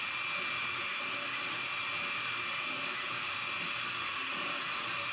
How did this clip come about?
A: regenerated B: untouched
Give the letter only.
B